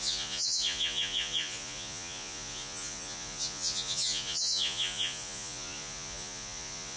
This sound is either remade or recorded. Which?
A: remade